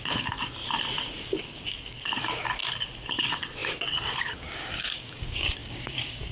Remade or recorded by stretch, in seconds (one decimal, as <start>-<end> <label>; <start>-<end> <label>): 0.0-0.6 remade; 0.6-1.2 recorded; 1.2-2.6 remade; 2.6-3.2 recorded; 3.2-6.3 remade